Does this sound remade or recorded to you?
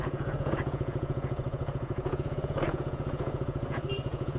remade